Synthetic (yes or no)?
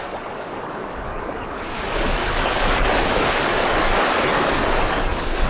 yes